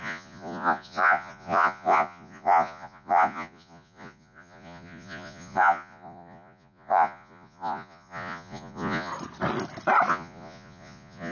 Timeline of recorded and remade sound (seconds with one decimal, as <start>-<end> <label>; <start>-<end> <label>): 0.0-9.1 remade; 9.1-10.1 recorded; 10.1-11.3 remade